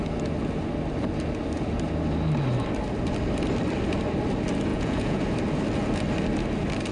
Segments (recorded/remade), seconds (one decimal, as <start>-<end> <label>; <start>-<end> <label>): 0.0-4.7 recorded; 4.7-5.2 remade; 5.2-6.9 recorded